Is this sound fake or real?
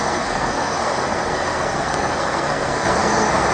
fake